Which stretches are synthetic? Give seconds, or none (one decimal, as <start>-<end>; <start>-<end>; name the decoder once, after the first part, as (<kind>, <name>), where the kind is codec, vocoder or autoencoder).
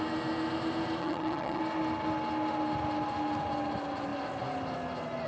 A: 1.0-1.6 (vocoder, HiFi-GAN)